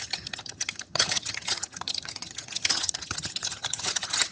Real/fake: fake